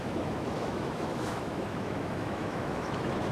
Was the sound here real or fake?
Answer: fake